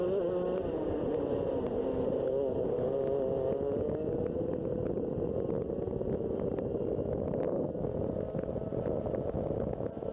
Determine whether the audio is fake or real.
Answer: real